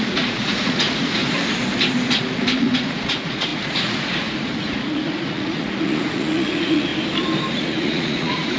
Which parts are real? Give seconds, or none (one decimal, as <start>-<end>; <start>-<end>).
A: 1.2-2.6; 6.9-7.5